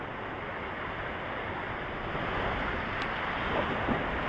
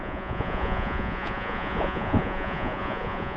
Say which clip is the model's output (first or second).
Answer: second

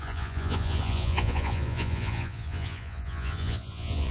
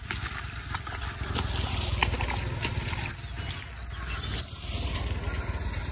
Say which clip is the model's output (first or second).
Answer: first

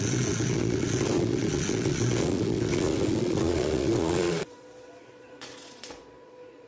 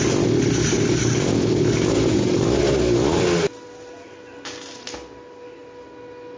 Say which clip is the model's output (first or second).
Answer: first